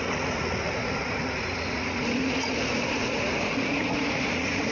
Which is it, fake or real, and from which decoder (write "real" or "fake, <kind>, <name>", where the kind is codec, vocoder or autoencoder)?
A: fake, vocoder, Vocos